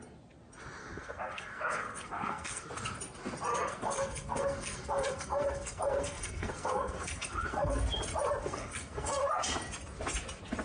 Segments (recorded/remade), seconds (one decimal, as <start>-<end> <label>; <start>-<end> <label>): 0.0-0.8 recorded; 0.8-2.7 remade; 2.7-3.5 recorded; 3.5-7.8 remade; 7.8-8.4 recorded; 8.4-9.2 remade; 9.2-10.6 recorded